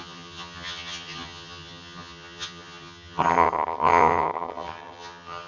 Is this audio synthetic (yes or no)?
yes